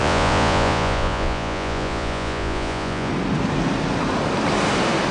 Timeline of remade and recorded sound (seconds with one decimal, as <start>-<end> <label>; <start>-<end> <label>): 0.0-3.1 remade; 3.1-5.1 recorded